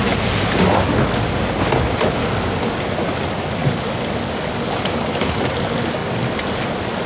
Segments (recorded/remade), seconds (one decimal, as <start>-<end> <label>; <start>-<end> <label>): 0.0-2.2 recorded; 2.2-2.8 remade; 2.8-3.6 recorded; 3.6-5.4 remade; 5.4-7.1 recorded